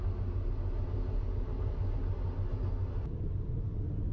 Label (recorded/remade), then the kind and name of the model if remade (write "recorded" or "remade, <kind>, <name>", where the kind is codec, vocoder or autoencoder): recorded